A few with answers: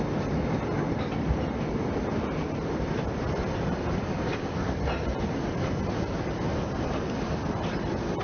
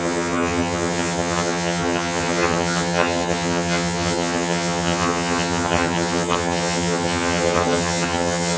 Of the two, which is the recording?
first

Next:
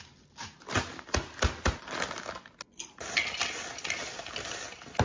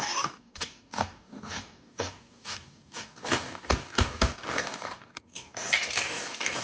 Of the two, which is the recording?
first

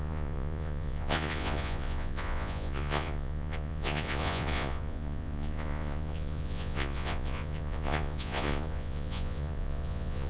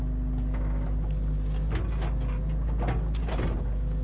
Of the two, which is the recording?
second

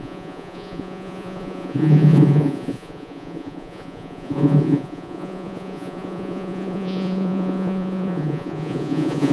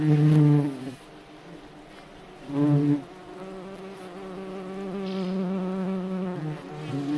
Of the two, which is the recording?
second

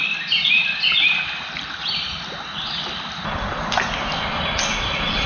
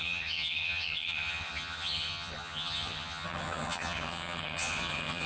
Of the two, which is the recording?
first